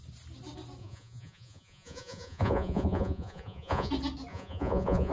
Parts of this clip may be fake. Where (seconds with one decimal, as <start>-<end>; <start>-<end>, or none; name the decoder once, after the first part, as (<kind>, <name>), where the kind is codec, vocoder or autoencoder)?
0.8-3.9 (vocoder, Vocos); 4.3-5.1